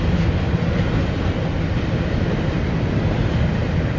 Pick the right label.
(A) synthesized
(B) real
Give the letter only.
B